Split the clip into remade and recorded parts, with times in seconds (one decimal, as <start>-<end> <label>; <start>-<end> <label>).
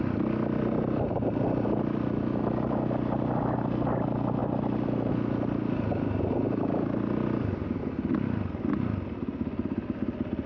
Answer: 0.0-10.5 recorded